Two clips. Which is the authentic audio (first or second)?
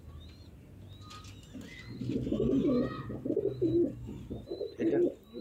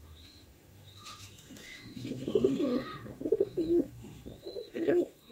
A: first